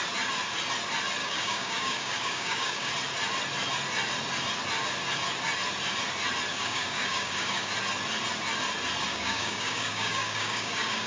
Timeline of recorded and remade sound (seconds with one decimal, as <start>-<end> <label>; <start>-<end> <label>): 0.0-1.2 recorded; 1.2-2.9 remade; 2.9-6.5 recorded; 6.5-7.7 remade; 7.7-9.1 recorded; 9.1-11.1 remade